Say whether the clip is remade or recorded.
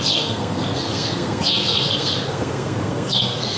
remade